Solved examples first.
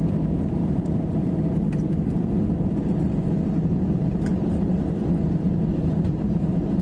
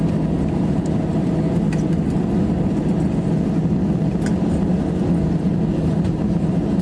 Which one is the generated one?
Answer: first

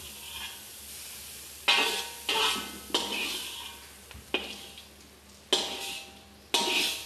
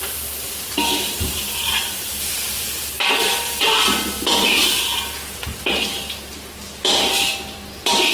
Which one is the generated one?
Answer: second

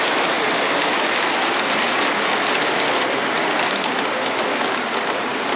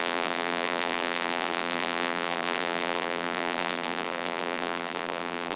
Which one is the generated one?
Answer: second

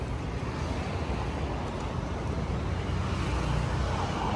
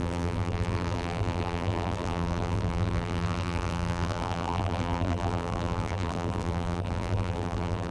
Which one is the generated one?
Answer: second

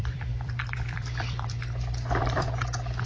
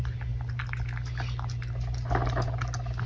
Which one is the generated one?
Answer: first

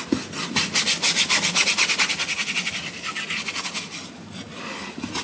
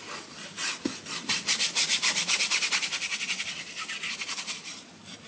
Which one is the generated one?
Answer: second